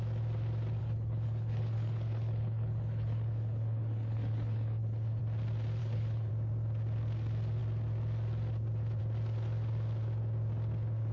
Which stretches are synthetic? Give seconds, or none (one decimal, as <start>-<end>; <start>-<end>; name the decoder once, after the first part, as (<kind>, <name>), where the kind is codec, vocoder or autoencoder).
0.8-5.2 (codec, HILCodec); 5.8-6.3